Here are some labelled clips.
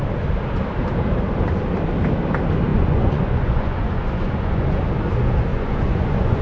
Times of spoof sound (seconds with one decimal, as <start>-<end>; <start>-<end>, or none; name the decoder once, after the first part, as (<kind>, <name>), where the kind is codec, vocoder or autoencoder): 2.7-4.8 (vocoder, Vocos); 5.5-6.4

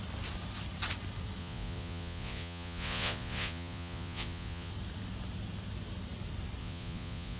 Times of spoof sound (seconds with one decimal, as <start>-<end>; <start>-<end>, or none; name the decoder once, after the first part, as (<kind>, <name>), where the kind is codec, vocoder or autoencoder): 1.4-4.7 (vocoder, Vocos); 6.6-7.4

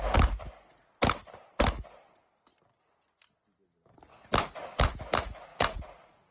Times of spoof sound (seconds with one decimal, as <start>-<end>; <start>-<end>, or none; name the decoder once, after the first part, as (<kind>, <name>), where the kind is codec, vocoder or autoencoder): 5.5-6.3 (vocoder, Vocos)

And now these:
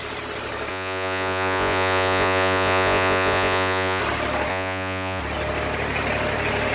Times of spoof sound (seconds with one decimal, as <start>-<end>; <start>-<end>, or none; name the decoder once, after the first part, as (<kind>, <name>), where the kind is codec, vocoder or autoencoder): 0.7-4.0 (vocoder, Vocos); 4.5-5.2

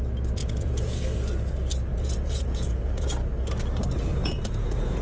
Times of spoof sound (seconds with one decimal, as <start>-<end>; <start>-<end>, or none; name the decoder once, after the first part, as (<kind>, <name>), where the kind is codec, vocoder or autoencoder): 0.4-1.0 (vocoder, Vocos); 1.9-3.1; 4.1-5.0